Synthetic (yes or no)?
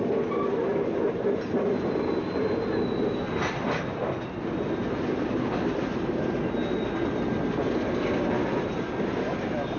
no